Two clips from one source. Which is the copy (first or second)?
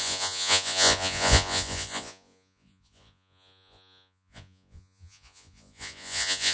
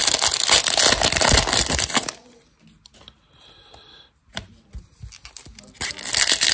first